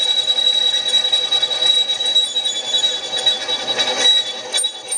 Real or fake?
real